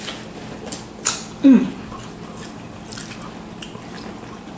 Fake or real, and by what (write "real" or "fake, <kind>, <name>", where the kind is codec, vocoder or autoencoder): real